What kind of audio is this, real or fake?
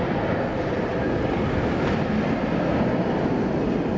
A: real